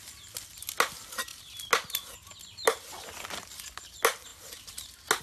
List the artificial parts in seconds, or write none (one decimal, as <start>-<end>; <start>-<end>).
none